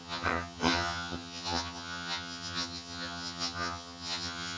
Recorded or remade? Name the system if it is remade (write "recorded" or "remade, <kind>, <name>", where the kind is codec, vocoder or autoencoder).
remade, vocoder, HiFi-GAN